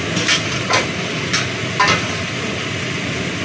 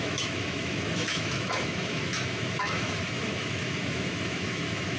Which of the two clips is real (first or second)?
first